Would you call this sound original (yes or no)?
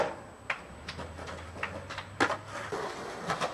yes